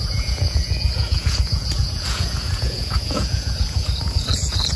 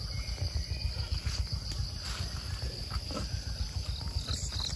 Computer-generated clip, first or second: first